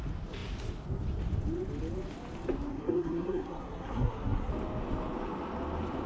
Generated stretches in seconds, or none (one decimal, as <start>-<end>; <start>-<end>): 2.7-4.5